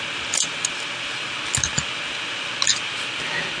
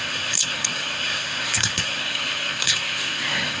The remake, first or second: second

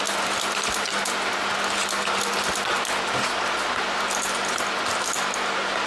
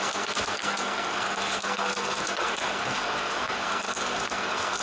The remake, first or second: second